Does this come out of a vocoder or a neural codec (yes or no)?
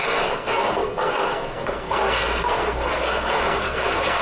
yes